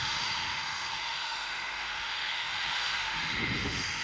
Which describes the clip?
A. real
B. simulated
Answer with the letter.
B